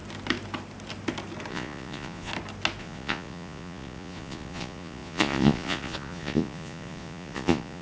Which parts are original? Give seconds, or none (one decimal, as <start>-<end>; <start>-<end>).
0.0-1.5; 2.3-2.8